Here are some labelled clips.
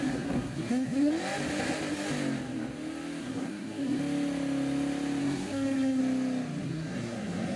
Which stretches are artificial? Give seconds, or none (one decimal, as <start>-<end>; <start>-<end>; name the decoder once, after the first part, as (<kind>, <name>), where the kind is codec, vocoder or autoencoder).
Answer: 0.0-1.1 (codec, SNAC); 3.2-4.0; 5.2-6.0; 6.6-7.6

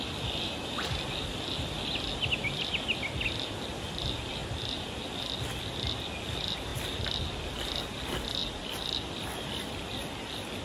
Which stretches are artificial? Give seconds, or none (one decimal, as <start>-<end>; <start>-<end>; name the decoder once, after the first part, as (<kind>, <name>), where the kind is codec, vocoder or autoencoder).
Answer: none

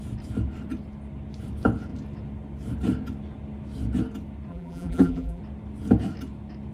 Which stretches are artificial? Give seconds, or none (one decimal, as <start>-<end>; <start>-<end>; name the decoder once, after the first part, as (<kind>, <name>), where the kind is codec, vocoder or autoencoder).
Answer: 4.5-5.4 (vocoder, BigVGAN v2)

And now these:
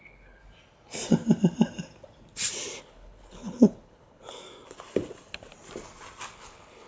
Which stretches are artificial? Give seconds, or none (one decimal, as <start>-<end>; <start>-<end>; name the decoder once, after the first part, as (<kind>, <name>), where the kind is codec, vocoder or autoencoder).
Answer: 0.0-0.4 (codec, HILCodec); 2.8-4.4; 6.3-6.9

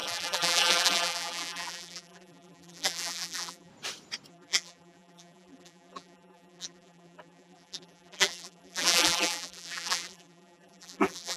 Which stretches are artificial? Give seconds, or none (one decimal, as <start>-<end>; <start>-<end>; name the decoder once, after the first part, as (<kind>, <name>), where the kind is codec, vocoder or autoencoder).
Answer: 0.0-3.7 (vocoder, BigVGAN v2); 4.3-11.4